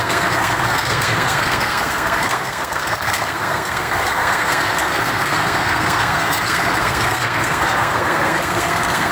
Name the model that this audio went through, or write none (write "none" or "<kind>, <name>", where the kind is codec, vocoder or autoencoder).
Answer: codec, SNAC